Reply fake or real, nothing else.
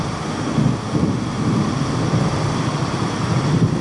fake